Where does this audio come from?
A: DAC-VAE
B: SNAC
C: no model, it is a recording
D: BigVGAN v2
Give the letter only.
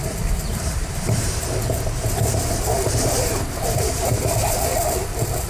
D